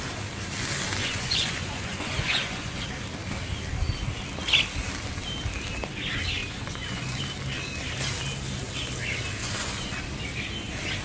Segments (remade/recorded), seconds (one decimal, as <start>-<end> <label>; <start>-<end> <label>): 0.0-1.0 recorded; 1.0-2.8 remade; 2.8-6.4 recorded; 6.4-7.2 remade; 7.2-9.4 recorded; 9.4-9.9 remade; 9.9-11.0 recorded